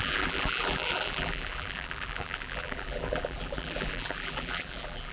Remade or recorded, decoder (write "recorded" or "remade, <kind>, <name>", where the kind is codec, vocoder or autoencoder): remade, vocoder, BigVGAN v2